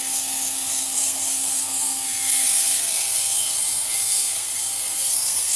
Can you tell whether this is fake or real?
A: fake